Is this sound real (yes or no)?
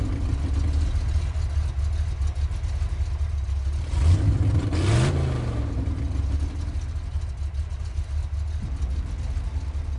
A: yes